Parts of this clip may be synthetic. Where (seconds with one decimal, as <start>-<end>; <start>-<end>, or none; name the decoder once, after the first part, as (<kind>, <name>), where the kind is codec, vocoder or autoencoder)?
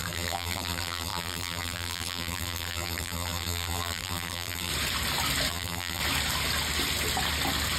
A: 0.0-4.7 (vocoder, BigVGAN v2); 5.5-6.0